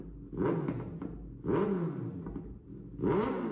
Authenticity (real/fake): real